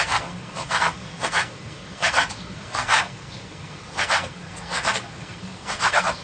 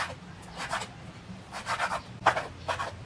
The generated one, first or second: first